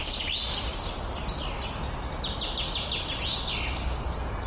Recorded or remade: recorded